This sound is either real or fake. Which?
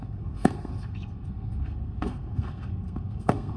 fake